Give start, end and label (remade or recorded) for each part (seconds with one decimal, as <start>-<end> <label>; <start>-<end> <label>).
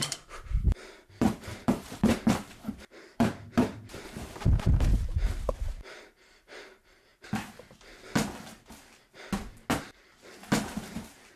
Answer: 0.0-7.1 remade; 7.1-10.3 recorded; 10.3-11.4 remade